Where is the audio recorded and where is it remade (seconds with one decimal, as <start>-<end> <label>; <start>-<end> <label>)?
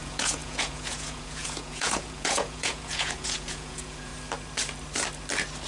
0.0-4.1 remade; 4.1-5.7 recorded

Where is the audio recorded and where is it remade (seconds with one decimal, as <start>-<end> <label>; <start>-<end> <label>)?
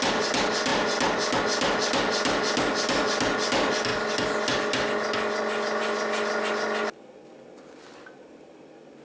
0.0-9.0 recorded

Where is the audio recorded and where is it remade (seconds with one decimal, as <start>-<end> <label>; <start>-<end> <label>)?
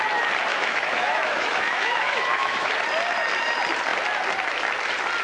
0.0-0.5 recorded; 0.5-2.7 remade; 2.7-5.2 recorded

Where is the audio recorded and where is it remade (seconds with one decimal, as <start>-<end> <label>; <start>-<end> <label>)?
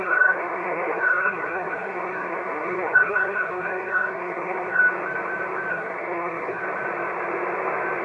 0.0-4.8 remade; 4.8-5.7 recorded; 5.7-6.6 remade; 6.6-8.0 recorded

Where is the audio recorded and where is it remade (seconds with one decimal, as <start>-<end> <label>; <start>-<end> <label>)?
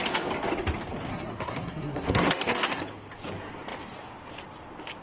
0.0-1.1 recorded; 1.1-2.8 remade; 2.8-5.0 recorded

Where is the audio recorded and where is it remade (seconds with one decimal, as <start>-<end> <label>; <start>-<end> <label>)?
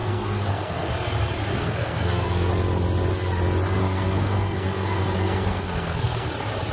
0.0-0.9 remade; 0.9-1.5 recorded; 1.5-2.5 remade; 2.5-3.8 recorded; 3.8-6.3 remade; 6.3-6.7 recorded